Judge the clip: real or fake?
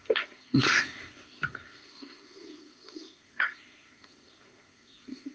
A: fake